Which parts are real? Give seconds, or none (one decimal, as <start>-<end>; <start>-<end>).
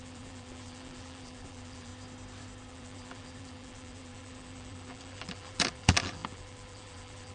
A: 1.9-2.7